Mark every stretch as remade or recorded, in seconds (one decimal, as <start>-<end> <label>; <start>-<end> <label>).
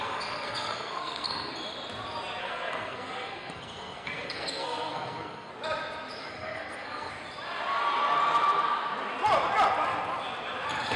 0.0-1.5 remade; 1.5-2.4 recorded; 2.4-5.5 remade; 5.5-6.2 recorded; 6.2-7.1 remade; 7.1-11.0 recorded